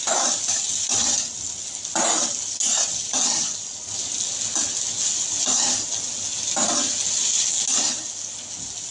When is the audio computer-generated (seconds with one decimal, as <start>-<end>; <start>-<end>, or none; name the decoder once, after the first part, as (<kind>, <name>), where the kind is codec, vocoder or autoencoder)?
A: none